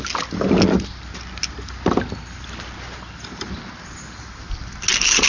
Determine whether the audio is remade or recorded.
recorded